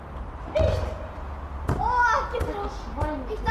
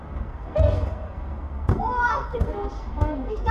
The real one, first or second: first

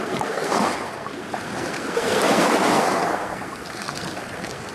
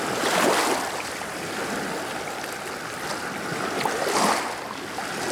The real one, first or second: second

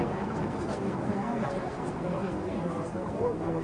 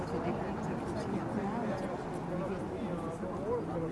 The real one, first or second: second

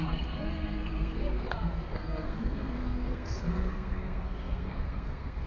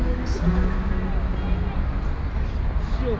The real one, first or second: second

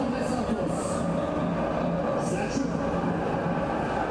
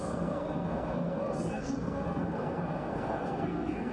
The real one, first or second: first